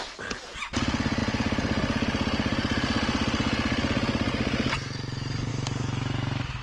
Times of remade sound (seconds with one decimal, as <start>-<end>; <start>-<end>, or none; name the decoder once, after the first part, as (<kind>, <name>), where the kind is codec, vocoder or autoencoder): 5.5-6.6 (autoencoder, DAC-VAE)